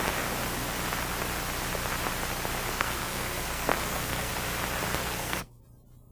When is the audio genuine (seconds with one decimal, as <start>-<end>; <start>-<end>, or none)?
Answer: 0.0-2.7; 4.3-5.0; 5.6-6.1